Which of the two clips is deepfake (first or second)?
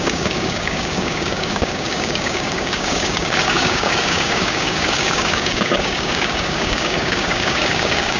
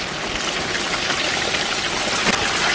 first